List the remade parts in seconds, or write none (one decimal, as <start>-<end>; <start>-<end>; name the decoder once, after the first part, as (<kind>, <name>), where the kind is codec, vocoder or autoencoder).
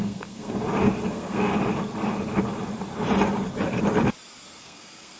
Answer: 0.0-0.6 (codec, SNAC); 1.1-1.5; 4.6-5.2